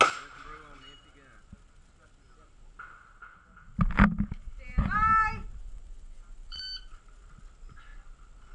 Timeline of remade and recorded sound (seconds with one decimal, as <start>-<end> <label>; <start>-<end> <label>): 0.0-5.6 recorded; 5.6-6.6 remade; 6.6-8.5 recorded